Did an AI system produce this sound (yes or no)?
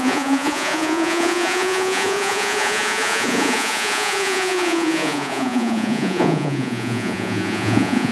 yes